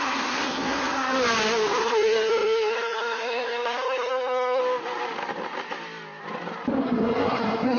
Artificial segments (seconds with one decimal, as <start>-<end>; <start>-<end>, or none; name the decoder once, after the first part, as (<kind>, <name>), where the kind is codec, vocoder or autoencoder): 0.0-1.1 (codec, SNAC); 1.8-4.6; 6.8-7.8